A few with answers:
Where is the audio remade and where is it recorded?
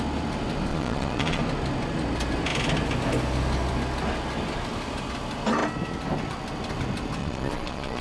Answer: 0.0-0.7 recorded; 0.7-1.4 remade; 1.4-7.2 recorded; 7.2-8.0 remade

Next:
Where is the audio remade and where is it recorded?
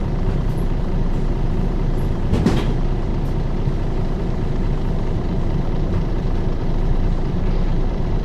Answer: 0.0-3.1 remade; 3.1-3.9 recorded; 3.9-8.2 remade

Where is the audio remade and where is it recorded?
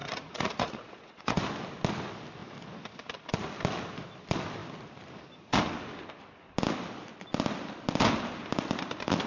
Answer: 0.0-1.4 remade; 1.4-9.3 recorded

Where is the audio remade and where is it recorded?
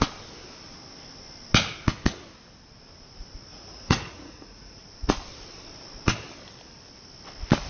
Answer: 0.0-3.5 recorded; 3.5-4.8 remade; 4.8-7.7 recorded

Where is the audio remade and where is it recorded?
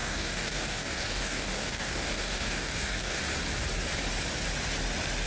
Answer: 0.0-3.2 remade; 3.2-5.3 recorded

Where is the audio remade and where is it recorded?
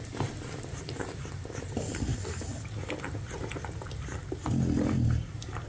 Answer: 0.0-5.7 recorded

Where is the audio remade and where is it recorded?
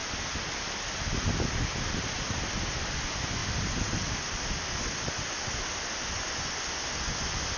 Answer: 0.0-2.8 recorded; 2.8-3.4 remade; 3.4-6.0 recorded; 6.0-7.6 remade